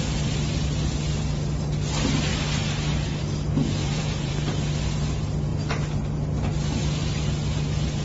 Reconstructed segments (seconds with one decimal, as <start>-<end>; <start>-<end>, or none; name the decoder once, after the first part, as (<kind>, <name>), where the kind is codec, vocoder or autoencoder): 3.8-4.3 (vocoder, Vocos)